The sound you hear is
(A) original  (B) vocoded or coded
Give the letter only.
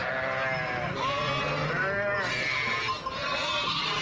A